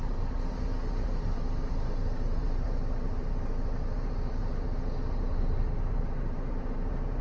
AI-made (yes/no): yes